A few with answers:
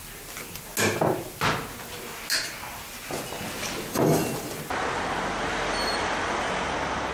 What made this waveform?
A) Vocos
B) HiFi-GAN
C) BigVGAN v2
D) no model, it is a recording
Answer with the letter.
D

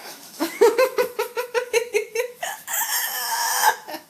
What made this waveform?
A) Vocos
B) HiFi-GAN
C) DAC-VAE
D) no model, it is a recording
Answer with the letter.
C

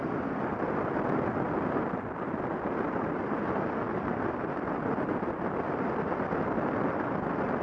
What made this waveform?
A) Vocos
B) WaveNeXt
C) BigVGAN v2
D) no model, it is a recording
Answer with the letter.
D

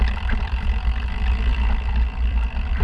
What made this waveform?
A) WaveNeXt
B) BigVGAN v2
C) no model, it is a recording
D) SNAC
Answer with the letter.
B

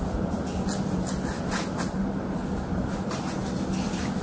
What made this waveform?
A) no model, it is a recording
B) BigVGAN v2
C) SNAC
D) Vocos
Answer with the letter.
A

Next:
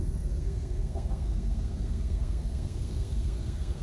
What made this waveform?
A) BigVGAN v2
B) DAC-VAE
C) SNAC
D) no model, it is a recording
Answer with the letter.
C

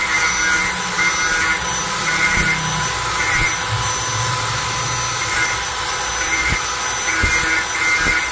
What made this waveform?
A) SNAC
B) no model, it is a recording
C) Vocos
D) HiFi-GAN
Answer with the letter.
B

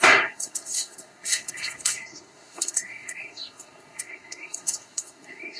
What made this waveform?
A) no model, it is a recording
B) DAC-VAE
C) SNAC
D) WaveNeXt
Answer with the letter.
C